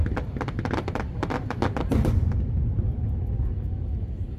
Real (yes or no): yes